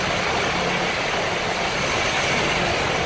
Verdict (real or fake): real